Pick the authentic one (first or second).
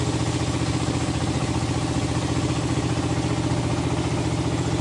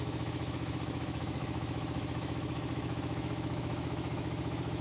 first